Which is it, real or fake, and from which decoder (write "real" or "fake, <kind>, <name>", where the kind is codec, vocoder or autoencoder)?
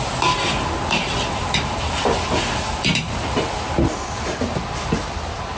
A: real